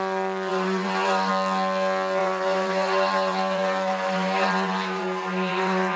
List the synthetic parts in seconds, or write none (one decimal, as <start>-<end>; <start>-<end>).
0.5-1.3; 2.2-6.0